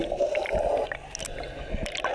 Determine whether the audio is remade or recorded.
recorded